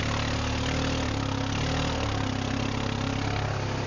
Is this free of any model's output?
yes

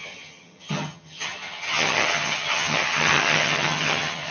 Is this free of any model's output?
no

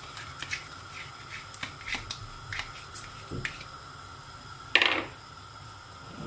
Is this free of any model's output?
yes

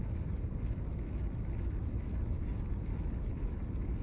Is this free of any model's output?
yes